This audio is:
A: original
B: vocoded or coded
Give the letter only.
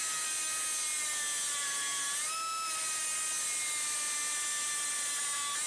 A